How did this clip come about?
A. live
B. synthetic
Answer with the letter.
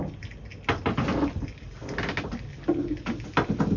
A